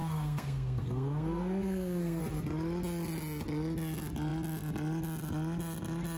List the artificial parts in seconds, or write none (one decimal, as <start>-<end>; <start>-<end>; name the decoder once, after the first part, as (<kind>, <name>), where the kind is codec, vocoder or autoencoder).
0.0-2.2 (codec, SNAC)